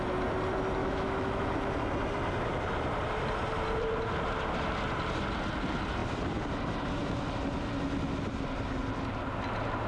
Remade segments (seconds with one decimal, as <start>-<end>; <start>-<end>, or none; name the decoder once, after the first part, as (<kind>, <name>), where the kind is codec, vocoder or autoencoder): 0.8-1.5 (autoencoder, DAC-VAE)